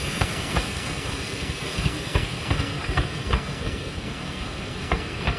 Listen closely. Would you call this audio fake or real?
fake